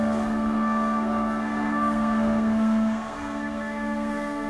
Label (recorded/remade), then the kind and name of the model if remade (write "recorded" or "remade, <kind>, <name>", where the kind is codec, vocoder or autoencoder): remade, codec, SNAC